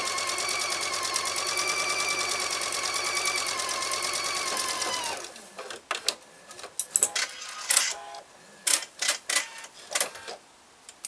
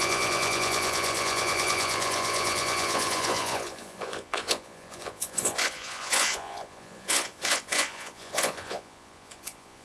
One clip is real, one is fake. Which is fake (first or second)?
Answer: second